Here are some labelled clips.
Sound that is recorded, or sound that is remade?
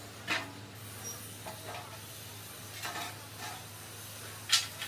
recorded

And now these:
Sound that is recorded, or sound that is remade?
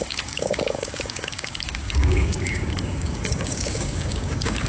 remade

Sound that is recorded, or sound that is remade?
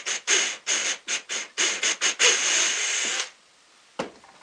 recorded